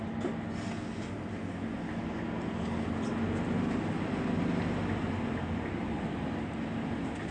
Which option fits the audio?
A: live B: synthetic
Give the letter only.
A